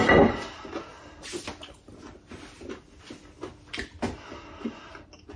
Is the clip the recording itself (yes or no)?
yes